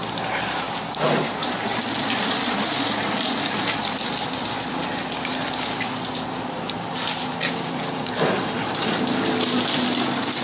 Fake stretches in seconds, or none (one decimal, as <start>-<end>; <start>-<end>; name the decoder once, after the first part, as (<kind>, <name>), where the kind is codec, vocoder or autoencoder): none